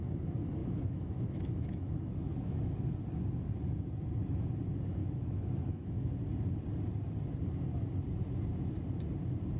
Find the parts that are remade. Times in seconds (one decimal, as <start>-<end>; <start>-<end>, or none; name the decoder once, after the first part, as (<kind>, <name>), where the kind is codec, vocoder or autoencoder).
0.6-2.6 (autoencoder, DAC-VAE); 5.0-6.1